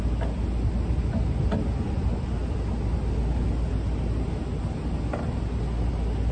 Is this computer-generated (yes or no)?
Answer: no